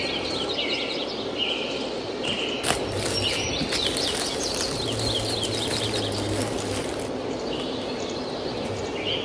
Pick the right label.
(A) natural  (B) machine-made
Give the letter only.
A